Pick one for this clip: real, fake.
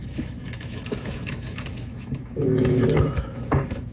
fake